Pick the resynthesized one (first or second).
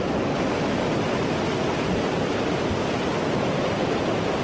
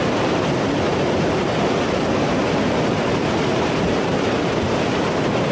second